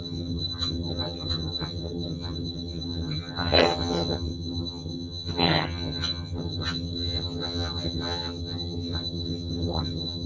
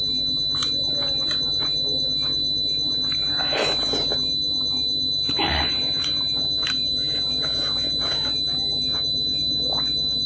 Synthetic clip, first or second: first